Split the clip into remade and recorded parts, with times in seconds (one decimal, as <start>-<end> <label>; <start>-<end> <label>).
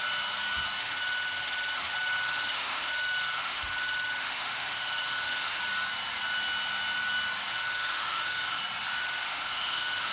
0.0-0.8 recorded; 0.8-5.6 remade; 5.6-7.5 recorded; 7.5-8.6 remade; 8.6-9.0 recorded; 9.0-10.1 remade